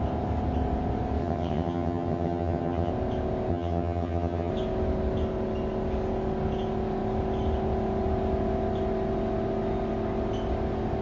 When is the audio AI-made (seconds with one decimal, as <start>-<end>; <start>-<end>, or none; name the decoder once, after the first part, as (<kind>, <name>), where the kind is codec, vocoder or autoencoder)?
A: 1.2-2.9 (vocoder, HiFi-GAN); 3.5-4.5